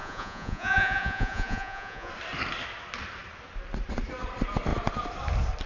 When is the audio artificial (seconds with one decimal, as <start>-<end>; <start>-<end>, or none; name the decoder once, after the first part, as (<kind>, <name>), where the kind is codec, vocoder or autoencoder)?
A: 0.0-2.1 (vocoder, Vocos)

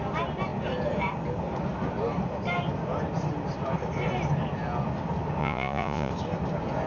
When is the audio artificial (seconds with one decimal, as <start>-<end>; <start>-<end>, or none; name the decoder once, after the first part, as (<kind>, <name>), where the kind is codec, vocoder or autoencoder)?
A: 5.4-6.1 (vocoder, Vocos)

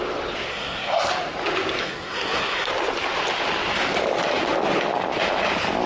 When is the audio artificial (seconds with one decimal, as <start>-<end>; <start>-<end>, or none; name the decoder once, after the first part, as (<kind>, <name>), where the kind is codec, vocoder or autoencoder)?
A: 0.5-1.1 (codec, SNAC); 1.8-2.7

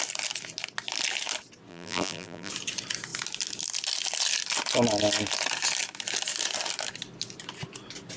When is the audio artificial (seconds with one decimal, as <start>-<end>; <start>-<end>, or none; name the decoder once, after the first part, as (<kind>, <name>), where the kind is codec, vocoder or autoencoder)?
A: 1.7-2.5 (vocoder, BigVGAN v2)

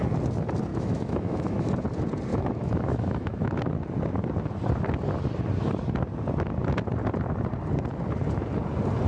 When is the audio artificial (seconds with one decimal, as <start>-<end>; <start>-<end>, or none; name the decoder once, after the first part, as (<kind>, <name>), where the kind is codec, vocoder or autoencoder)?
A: 0.7-1.7 (autoencoder, DAC-VAE); 2.3-3.6

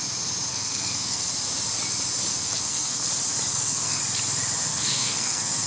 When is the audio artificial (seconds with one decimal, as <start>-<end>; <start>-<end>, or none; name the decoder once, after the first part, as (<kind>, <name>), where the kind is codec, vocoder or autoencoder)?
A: 0.5-1.3 (codec, SNAC); 2.3-3.1; 3.5-4.0; 4.7-5.7

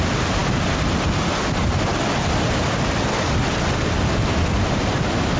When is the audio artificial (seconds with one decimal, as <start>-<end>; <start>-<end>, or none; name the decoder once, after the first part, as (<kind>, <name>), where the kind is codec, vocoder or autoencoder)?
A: none

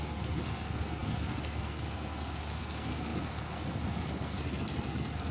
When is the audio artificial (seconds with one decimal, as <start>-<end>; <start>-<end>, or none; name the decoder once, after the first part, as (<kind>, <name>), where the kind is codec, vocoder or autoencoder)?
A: 0.0-5.3 (codec, SNAC)